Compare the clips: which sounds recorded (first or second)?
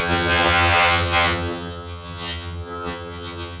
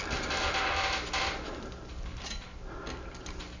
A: second